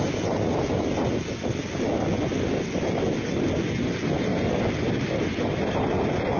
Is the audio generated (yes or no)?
no